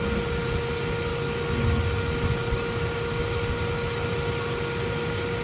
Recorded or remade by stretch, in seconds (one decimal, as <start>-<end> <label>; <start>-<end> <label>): 0.0-5.4 recorded